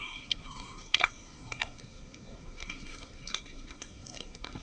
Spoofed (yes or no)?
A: yes